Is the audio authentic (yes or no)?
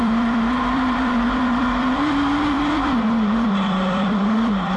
no